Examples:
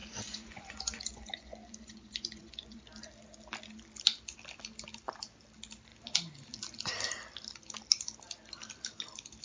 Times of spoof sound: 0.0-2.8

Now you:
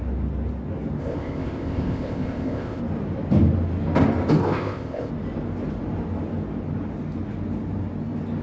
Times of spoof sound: 1.0-2.8; 4.4-5.1

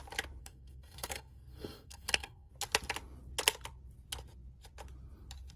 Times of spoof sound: 0.4-2.5

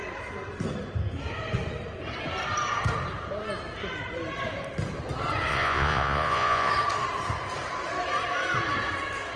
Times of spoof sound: 5.5-6.7

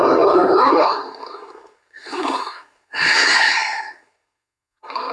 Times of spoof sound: 0.0-5.1